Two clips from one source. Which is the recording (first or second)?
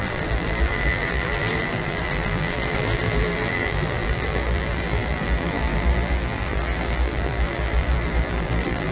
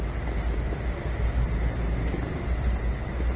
second